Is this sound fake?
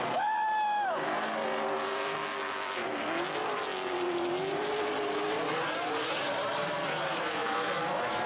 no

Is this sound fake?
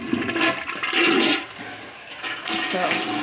no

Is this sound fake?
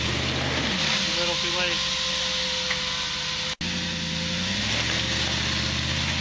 no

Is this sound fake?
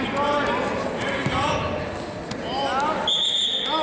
no